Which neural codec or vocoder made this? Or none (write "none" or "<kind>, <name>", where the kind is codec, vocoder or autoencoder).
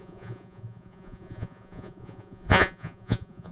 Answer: vocoder, Vocos